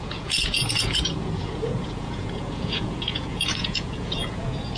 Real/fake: fake